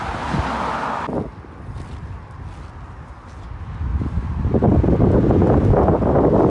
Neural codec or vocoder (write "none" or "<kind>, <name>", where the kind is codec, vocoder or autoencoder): none